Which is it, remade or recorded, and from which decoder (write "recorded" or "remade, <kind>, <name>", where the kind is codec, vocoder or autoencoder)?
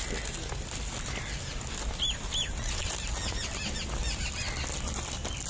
recorded